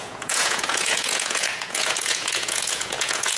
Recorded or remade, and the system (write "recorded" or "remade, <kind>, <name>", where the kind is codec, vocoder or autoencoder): remade, vocoder, Vocos